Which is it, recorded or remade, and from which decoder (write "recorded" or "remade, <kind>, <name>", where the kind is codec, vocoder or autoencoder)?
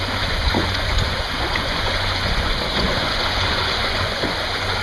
remade, vocoder, Vocos